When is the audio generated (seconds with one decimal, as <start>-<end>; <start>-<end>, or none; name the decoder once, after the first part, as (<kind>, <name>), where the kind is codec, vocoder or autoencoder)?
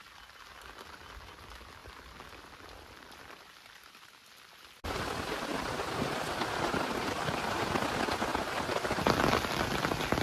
5.5-7.7 (vocoder, BigVGAN v2); 8.3-9.1